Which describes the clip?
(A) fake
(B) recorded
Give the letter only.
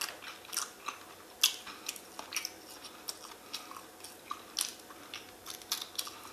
B